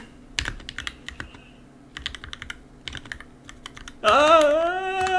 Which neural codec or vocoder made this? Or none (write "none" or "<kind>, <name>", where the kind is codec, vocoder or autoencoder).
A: none